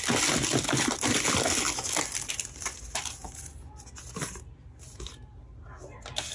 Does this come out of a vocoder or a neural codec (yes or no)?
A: no